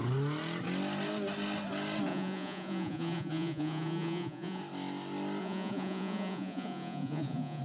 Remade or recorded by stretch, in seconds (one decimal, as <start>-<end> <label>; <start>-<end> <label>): 0.0-2.1 recorded; 2.1-4.6 remade; 4.6-5.4 recorded; 5.4-7.6 remade

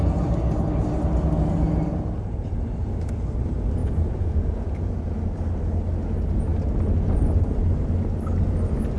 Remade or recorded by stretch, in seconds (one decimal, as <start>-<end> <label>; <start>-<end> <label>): 0.0-3.8 recorded; 3.8-5.2 remade; 5.2-9.0 recorded

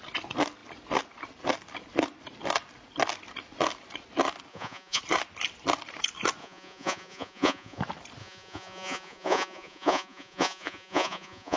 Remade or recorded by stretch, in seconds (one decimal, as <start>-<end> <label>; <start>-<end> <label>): 0.0-4.5 recorded; 4.5-5.0 remade; 5.0-6.4 recorded; 6.4-7.8 remade; 7.8-8.2 recorded; 8.2-11.6 remade

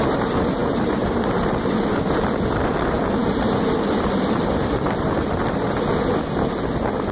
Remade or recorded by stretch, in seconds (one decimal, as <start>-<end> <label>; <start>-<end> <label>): 0.0-7.1 recorded

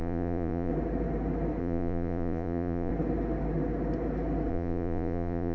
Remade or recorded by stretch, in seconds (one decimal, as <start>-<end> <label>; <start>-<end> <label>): 0.0-0.7 remade; 0.7-1.6 recorded; 1.6-2.9 remade; 2.9-4.5 recorded; 4.5-5.5 remade

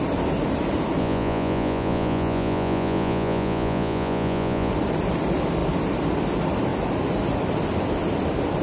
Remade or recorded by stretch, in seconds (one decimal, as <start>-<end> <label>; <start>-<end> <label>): 0.0-1.0 recorded; 1.0-4.7 remade; 4.7-8.6 recorded

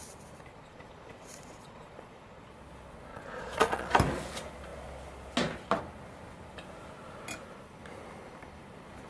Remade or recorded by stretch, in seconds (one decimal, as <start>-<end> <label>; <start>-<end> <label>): 0.0-0.5 recorded; 0.5-2.5 remade; 2.5-3.1 recorded; 3.1-3.9 remade; 3.9-9.1 recorded